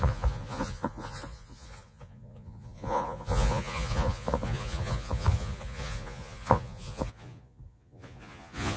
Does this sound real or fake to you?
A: fake